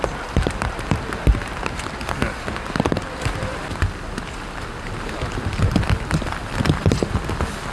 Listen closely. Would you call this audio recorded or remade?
recorded